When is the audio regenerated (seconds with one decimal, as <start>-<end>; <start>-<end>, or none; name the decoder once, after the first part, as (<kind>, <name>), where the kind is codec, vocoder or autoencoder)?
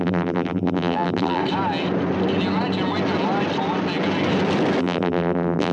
0.0-1.4 (vocoder, BigVGAN v2); 4.8-5.7